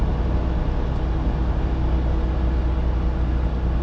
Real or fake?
real